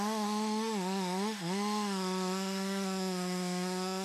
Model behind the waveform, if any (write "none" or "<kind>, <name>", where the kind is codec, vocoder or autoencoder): autoencoder, DAC-VAE